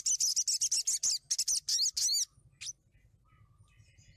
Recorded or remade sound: recorded